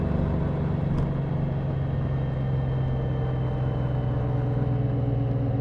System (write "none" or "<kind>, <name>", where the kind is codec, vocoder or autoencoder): none